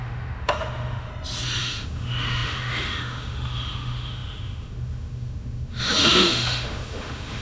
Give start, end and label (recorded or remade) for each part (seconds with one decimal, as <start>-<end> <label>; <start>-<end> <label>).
0.0-1.1 remade; 1.1-1.6 recorded; 1.6-7.4 remade